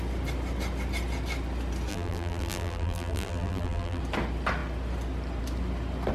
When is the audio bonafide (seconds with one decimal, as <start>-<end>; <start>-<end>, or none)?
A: 0.0-1.9; 4.0-6.1

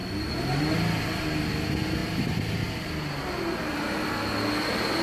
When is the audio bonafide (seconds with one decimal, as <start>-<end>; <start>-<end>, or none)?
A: 0.0-5.0

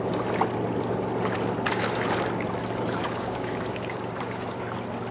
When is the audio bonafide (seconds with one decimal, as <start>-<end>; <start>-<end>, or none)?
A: 0.0-3.0; 4.6-5.1

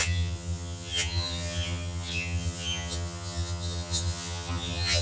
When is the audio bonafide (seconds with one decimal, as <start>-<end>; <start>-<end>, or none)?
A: none